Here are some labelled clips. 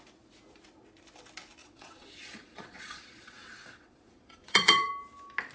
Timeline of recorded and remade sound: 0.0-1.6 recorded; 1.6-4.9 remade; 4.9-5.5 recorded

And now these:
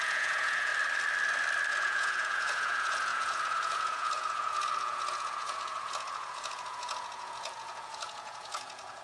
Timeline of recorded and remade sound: 0.0-0.7 remade; 0.7-1.7 recorded; 1.7-9.0 remade

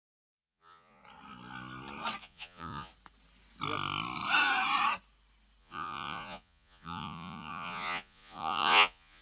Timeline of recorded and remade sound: 0.0-1.0 remade; 1.0-2.2 recorded; 2.2-2.9 remade; 2.9-5.6 recorded; 5.6-9.2 remade

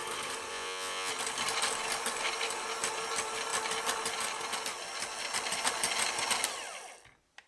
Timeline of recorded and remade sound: 0.0-0.5 recorded; 0.5-1.1 remade; 1.1-7.5 recorded

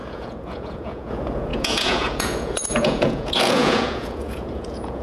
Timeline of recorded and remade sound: 0.0-5.0 remade

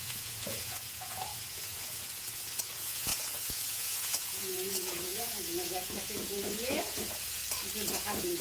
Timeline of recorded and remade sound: 0.0-7.4 remade; 7.4-7.9 recorded; 7.9-8.4 remade

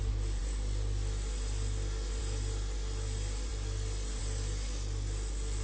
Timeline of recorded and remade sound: 0.0-5.6 recorded